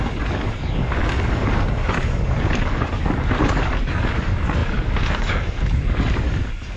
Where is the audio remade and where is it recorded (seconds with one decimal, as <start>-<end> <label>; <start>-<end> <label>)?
0.0-6.8 remade